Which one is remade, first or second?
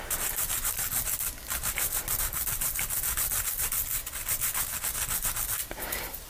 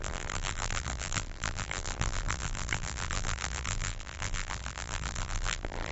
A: second